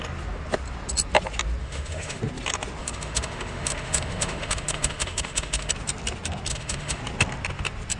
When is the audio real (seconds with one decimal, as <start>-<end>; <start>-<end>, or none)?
0.0-1.6; 2.2-2.8; 5.7-6.5; 7.0-8.0